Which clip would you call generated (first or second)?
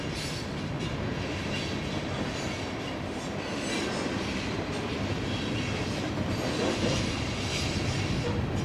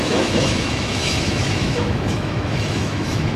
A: second